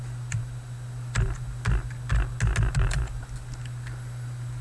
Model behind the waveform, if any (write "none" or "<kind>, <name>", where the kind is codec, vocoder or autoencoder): none